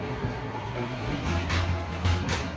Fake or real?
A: fake